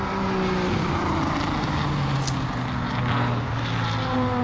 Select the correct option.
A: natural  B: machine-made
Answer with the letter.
A